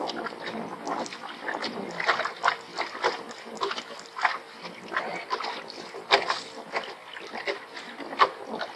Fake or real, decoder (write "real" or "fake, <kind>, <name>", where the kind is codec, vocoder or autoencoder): real